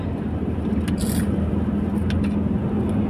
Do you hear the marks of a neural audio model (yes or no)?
no